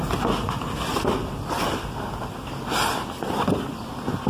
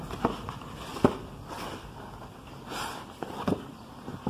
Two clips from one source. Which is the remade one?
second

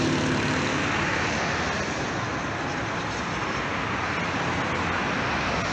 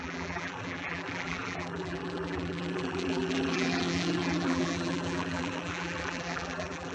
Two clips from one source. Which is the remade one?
second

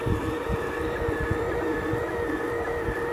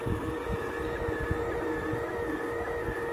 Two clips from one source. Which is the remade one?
first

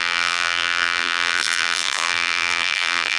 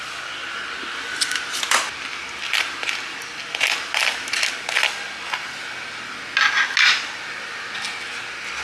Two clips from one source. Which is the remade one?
first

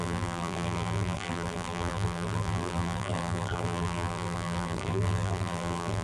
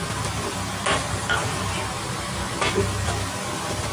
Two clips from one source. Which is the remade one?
first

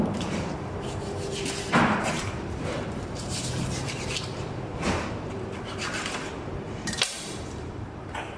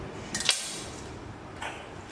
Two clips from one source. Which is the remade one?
first